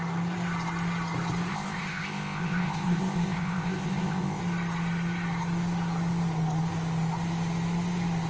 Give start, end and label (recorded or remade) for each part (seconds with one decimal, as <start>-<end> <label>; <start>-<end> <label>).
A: 0.0-1.5 recorded; 1.5-4.4 remade; 4.4-8.3 recorded